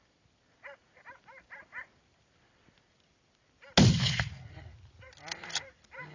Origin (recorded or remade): recorded